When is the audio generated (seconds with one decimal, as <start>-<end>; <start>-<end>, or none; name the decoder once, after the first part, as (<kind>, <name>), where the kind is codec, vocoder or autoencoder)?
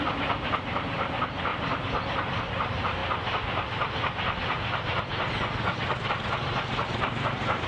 0.0-1.5 (vocoder, BigVGAN v2); 2.4-3.0; 6.1-7.7